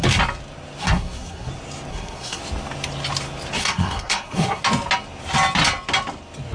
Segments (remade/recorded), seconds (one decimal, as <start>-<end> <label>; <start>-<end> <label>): 0.0-0.8 recorded; 0.8-1.5 remade; 1.5-1.9 recorded; 1.9-2.4 remade; 2.4-3.6 recorded; 3.6-4.6 remade; 4.6-6.5 recorded